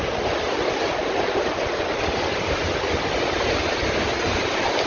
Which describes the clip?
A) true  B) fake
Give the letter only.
A